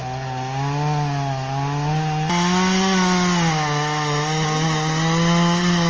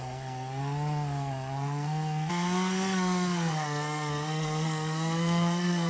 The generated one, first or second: second